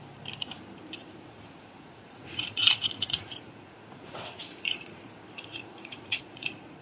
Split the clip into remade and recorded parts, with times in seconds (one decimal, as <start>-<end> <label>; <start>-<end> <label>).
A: 0.0-1.0 recorded; 1.0-5.1 remade; 5.1-5.5 recorded; 5.5-6.8 remade